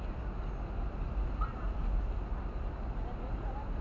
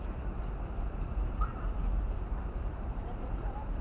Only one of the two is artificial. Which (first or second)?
second